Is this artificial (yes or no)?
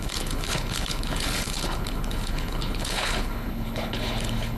yes